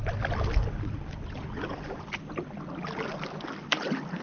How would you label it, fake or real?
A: real